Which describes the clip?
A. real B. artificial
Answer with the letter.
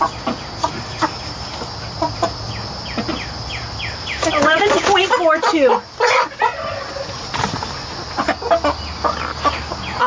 A